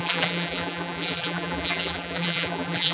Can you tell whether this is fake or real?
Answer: fake